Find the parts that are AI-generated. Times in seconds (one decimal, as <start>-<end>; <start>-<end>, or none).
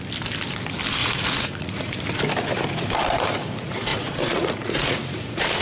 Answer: 1.0-2.0; 3.9-5.6